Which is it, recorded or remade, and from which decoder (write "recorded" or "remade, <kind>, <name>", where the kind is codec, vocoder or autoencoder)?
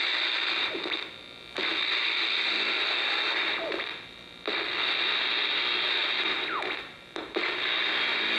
recorded